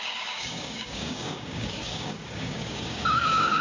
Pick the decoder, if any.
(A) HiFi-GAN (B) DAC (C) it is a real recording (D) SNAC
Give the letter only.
B